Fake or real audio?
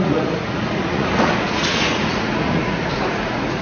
fake